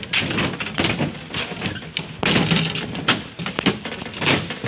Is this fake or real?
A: real